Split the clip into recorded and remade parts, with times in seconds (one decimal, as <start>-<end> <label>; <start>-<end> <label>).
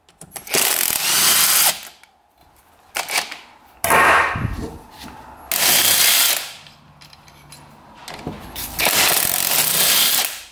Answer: 0.0-10.5 recorded